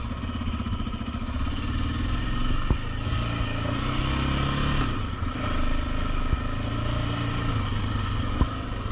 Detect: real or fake real